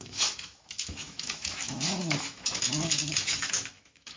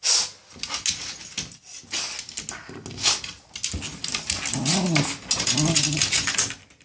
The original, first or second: second